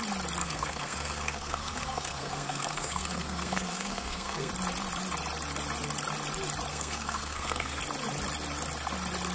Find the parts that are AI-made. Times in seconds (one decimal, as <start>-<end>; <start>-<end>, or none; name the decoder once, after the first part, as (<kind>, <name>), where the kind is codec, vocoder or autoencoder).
0.4-4.5 (codec, SNAC); 6.7-7.8

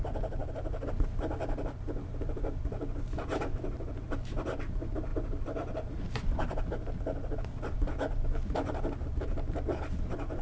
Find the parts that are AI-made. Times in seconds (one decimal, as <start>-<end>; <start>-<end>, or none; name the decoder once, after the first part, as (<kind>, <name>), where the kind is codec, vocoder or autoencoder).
none

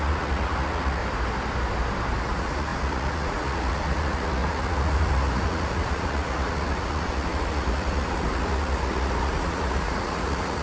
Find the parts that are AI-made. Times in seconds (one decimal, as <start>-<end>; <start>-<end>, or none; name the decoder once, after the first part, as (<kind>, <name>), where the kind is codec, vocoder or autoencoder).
0.0-1.0 (vocoder, Vocos); 2.2-10.6

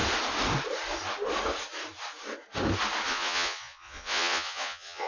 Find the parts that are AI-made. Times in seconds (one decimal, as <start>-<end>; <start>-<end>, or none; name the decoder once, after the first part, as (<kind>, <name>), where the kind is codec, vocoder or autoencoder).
3.1-5.1 (vocoder, Vocos)

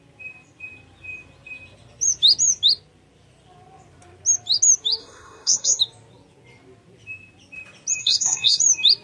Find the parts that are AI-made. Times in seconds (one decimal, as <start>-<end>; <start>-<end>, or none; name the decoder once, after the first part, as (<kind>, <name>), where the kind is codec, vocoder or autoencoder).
5.0-5.8 (codec, SNAC); 8.0-8.6

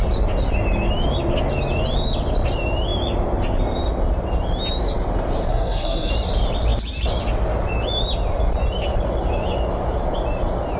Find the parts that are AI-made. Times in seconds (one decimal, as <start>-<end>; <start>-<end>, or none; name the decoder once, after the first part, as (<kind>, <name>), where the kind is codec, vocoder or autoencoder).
5.5-6.1 (codec, SNAC)

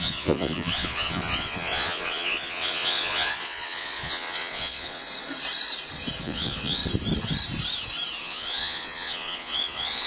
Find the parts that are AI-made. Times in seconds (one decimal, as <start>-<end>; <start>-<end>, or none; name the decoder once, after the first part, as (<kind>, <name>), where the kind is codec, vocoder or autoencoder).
0.0-5.0 (vocoder, Vocos); 6.2-6.8; 8.2-10.1